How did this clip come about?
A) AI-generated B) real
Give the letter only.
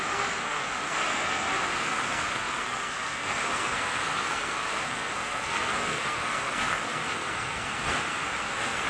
A